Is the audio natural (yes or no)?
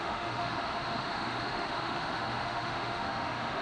no